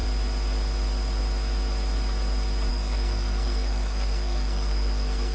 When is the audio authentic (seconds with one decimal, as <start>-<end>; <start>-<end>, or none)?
0.0-2.7